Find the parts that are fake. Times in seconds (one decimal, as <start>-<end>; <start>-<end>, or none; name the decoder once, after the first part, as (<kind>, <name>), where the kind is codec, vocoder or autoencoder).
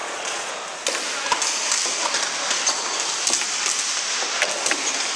0.0-0.5 (vocoder, Vocos)